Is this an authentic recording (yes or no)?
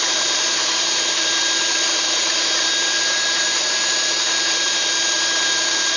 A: no